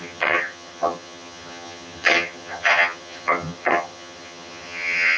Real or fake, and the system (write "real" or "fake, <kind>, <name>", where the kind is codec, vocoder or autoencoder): fake, vocoder, HiFi-GAN